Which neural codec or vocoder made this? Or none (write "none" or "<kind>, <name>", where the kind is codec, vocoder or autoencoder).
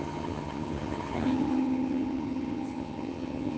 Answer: vocoder, HiFi-GAN